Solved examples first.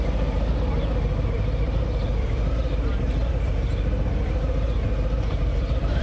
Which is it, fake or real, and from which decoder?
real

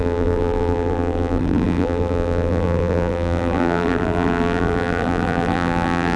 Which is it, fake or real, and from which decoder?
fake, vocoder, BigVGAN v2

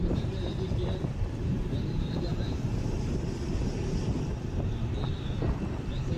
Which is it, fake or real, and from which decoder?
fake, vocoder, BigVGAN v2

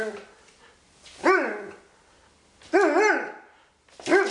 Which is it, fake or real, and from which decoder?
real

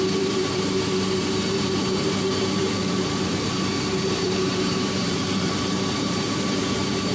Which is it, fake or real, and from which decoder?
fake, vocoder, BigVGAN v2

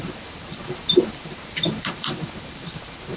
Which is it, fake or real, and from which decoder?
fake, vocoder, BigVGAN v2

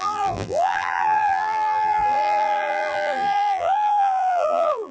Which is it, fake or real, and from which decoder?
fake, vocoder, BigVGAN v2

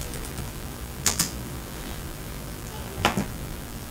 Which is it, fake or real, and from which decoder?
fake, vocoder, BigVGAN v2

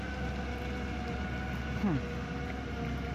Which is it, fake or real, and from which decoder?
real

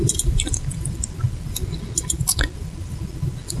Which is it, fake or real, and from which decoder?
real